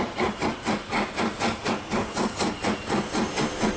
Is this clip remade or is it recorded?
recorded